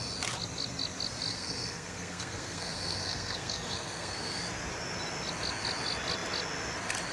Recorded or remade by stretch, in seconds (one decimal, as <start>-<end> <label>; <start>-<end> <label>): 0.0-1.3 recorded; 1.3-4.4 remade; 4.4-7.1 recorded